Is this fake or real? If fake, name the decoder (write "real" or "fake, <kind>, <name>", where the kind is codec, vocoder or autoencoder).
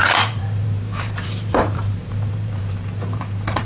fake, vocoder, BigVGAN v2